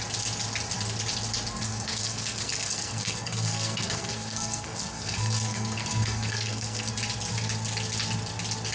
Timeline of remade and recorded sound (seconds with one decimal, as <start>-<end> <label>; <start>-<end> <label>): 0.0-1.7 recorded; 1.7-6.9 remade; 6.9-8.7 recorded